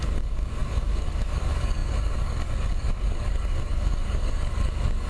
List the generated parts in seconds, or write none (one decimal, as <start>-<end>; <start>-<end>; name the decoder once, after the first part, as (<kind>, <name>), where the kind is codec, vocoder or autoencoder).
0.0-5.1 (codec, DAC)